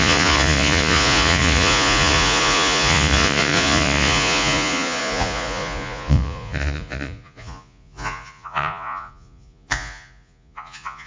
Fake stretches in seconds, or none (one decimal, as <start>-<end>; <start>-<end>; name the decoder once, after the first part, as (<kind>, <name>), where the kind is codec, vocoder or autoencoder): 0.0-11.1 (vocoder, Vocos)